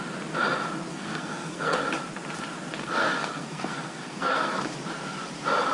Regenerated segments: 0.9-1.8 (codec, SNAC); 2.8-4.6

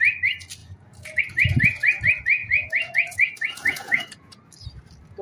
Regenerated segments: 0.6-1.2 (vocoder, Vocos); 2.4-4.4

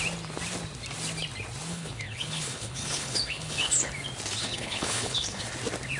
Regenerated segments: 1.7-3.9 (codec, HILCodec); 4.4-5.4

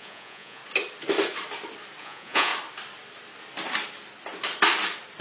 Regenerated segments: 0.0-0.6 (vocoder, Vocos); 2.0-2.5

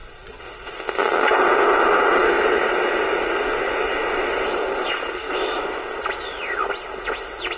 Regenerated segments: 5.2-5.8 (autoencoder, DAC-VAE)